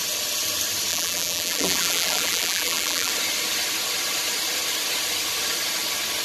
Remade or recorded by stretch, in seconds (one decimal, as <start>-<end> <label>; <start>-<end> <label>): 0.0-0.9 recorded; 0.9-3.1 remade; 3.1-6.2 recorded